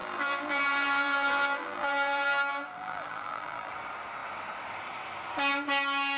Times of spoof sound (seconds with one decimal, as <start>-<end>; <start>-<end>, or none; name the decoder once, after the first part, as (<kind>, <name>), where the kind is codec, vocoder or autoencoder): 0.0-3.7 (vocoder, BigVGAN v2)